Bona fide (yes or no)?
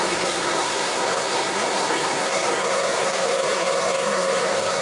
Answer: no